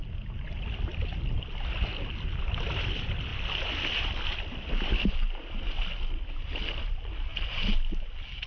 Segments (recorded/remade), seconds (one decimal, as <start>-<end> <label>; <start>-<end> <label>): 0.0-8.5 recorded